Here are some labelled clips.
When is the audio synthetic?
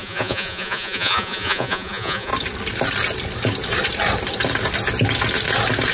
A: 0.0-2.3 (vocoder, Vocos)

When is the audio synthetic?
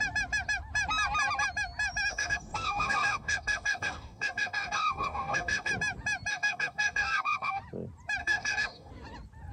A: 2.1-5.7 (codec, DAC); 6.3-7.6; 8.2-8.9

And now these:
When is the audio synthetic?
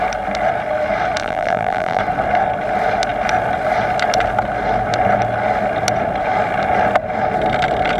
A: 1.2-2.0 (vocoder, BigVGAN v2)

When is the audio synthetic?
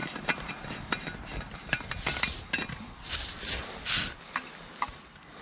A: none